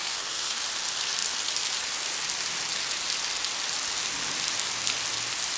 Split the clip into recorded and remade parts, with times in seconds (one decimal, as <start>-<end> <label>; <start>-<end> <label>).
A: 0.0-0.6 remade; 0.6-5.6 recorded